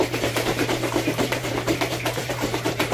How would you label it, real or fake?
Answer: fake